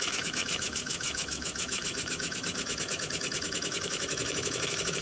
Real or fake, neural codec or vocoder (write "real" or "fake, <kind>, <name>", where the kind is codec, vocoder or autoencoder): fake, autoencoder, DAC-VAE